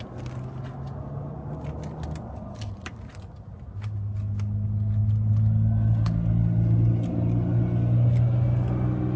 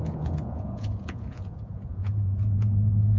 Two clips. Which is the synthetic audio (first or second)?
second